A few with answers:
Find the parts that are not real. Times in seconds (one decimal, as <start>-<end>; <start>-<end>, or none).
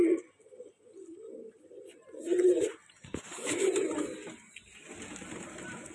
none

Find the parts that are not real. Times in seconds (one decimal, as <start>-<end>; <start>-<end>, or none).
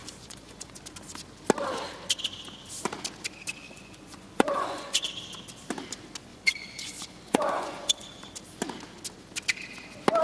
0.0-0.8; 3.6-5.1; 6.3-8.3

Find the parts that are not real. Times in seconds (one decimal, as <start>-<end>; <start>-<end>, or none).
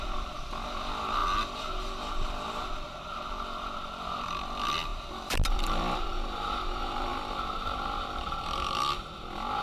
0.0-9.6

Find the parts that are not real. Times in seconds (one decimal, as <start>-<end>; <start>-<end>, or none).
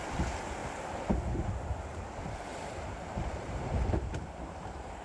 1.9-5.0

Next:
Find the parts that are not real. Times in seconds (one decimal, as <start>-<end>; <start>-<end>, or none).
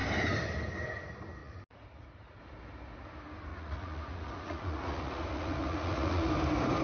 1.4-2.4; 3.5-6.3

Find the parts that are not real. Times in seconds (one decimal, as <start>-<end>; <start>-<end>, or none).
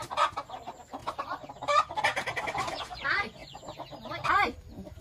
none